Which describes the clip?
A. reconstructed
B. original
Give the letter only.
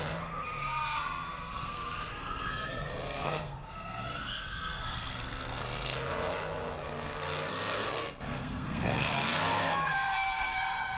A